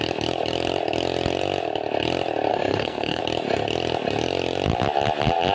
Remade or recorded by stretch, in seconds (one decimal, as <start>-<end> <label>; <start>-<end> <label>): 0.0-2.5 recorded; 2.5-3.2 remade; 3.2-5.5 recorded